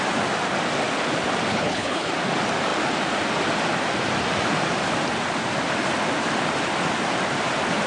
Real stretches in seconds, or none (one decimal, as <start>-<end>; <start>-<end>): 0.0-1.5; 2.1-7.9